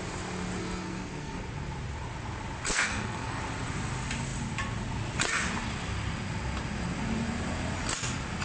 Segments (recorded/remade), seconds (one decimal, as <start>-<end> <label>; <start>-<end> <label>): 0.0-0.6 recorded; 0.6-1.4 remade; 1.4-2.7 recorded; 2.7-3.4 remade; 3.4-8.4 recorded